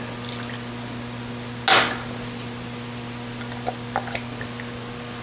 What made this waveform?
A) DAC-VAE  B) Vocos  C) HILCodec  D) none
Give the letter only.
D